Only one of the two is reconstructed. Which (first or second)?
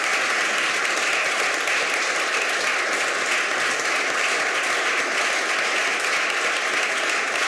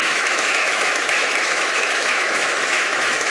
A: second